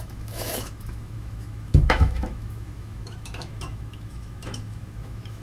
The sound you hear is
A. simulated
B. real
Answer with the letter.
A